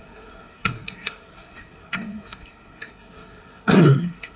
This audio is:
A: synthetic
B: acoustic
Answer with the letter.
A